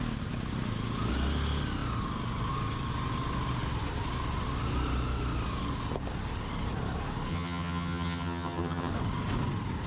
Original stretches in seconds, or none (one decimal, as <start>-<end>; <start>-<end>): 0.0-7.3; 8.9-9.9